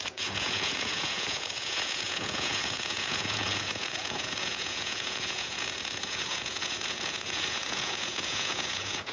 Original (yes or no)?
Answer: no